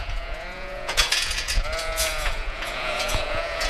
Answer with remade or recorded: remade